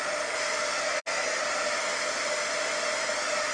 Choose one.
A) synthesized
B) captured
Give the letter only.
B